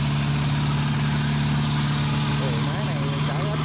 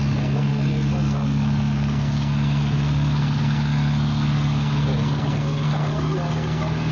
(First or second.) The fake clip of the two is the second